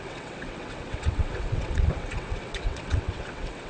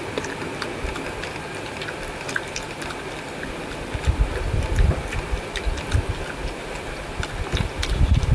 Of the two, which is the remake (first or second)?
first